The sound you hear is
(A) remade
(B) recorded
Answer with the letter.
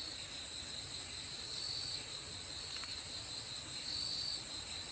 B